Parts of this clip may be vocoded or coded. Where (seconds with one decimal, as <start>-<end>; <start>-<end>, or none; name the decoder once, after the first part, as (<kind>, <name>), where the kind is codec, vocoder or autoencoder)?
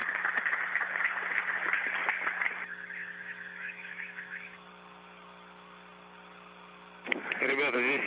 3.0-4.7 (autoencoder, DAC-VAE)